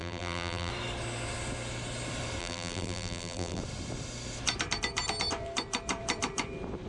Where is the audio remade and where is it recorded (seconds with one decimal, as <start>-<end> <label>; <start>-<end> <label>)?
0.0-0.7 remade; 0.7-2.4 recorded; 2.4-3.6 remade; 3.6-6.9 recorded